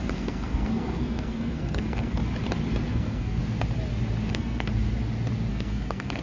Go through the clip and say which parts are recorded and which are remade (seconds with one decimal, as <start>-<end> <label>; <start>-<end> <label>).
0.0-2.2 remade; 2.2-2.9 recorded; 2.9-3.4 remade; 3.4-4.3 recorded; 4.3-4.7 remade; 4.7-5.5 recorded; 5.5-6.2 remade